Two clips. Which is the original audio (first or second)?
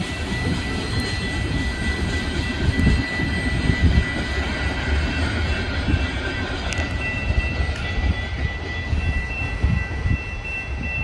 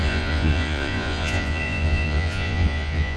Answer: first